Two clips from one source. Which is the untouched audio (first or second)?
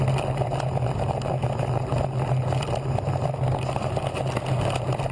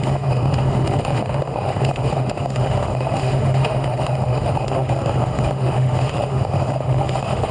first